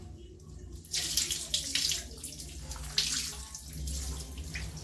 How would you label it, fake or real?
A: real